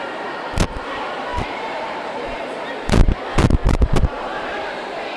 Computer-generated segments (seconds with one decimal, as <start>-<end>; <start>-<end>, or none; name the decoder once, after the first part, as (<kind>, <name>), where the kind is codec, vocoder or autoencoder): 1.3-2.5 (vocoder, BigVGAN v2); 3.6-5.2